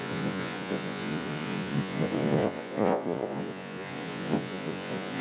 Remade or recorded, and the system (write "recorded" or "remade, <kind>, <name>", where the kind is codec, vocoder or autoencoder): remade, vocoder, Vocos